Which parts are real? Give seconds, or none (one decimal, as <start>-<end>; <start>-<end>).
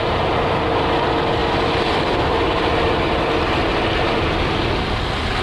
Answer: 0.0-5.4